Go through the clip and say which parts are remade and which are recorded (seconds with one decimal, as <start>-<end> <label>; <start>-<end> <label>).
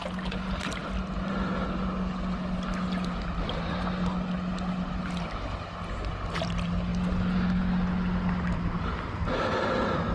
0.0-10.1 recorded